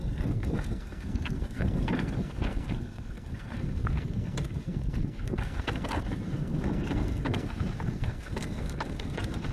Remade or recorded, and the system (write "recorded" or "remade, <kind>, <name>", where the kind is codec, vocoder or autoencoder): remade, codec, SNAC